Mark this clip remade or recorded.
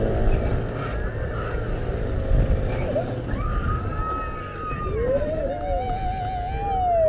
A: recorded